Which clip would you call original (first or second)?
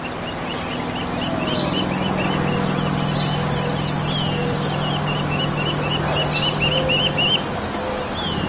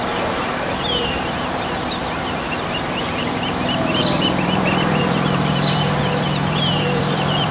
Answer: first